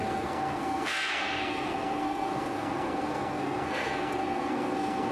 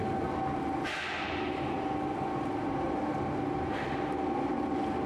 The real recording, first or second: second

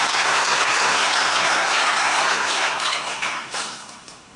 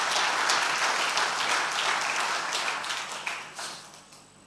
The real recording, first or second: second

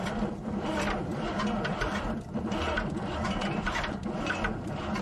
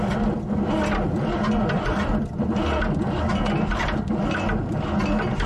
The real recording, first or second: second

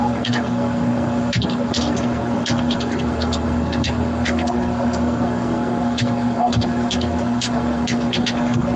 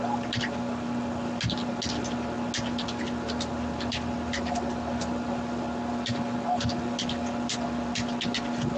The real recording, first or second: second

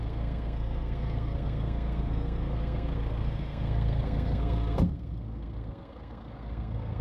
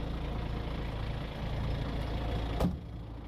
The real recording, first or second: second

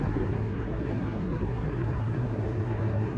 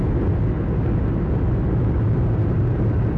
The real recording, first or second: second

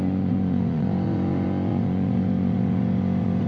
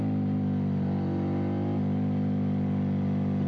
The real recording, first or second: second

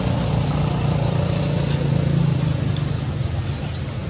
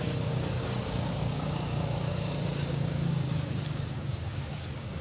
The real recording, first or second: first